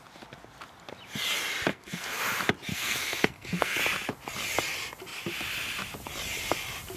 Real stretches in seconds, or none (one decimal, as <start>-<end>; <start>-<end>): 0.0-1.7; 2.2-2.7; 3.8-7.0